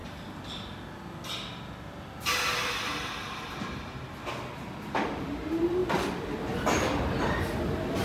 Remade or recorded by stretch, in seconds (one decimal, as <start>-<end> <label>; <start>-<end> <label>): 0.0-8.0 recorded